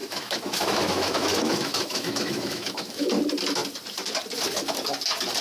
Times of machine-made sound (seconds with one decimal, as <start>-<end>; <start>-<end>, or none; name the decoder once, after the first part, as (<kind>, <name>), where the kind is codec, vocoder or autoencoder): 0.0-3.1 (autoencoder, DAC-VAE)